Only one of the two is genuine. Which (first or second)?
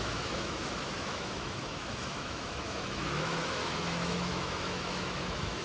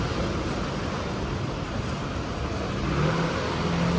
second